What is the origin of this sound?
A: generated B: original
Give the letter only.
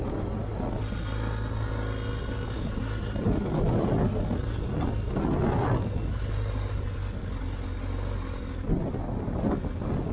B